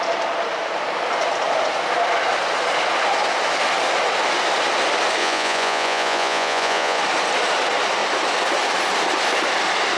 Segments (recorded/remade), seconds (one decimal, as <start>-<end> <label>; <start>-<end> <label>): 0.0-5.2 recorded; 5.2-7.0 remade; 7.0-10.0 recorded